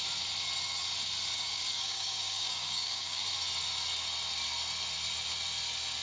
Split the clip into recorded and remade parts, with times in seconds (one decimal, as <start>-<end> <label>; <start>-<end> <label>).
0.0-1.5 recorded; 1.5-3.2 remade; 3.2-6.0 recorded